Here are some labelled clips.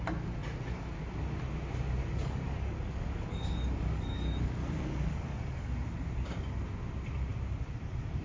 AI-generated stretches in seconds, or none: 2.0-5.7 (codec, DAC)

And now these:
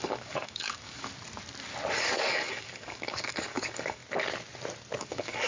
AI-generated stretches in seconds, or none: 0.0-1.1 (codec, DAC); 1.9-4.0; 5.0-5.5

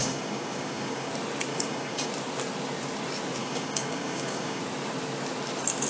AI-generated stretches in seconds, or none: 0.0-1.1 (codec, DAC); 1.5-2.1; 3.4-4.6

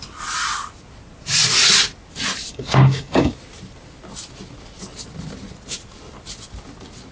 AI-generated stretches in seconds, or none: 2.5-3.3 (codec, DAC)